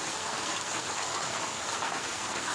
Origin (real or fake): fake